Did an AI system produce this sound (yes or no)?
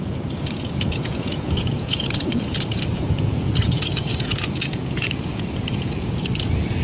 yes